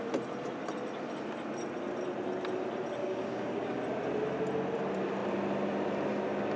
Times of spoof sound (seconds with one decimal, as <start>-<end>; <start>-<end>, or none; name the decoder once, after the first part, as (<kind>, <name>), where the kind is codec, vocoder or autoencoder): 3.0-3.8 (codec, DAC)